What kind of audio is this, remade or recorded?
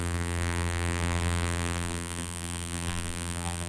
remade